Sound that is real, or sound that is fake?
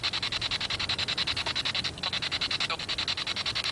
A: real